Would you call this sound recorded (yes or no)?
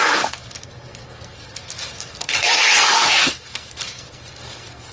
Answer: no